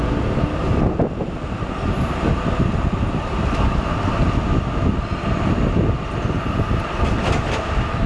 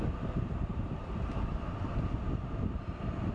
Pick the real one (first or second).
first